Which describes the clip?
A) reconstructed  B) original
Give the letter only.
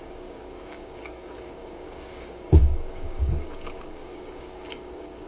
A